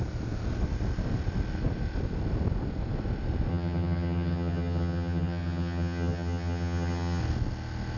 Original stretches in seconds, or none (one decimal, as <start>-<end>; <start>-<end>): 0.0-3.5; 7.2-8.0